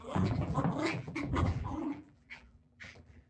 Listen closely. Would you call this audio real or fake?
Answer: fake